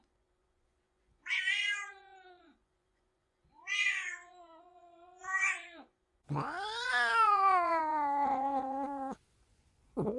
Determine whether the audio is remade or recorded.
remade